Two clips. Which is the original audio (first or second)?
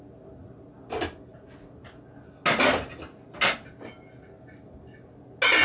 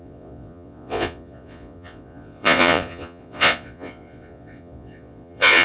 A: first